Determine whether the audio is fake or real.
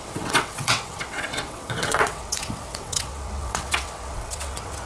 fake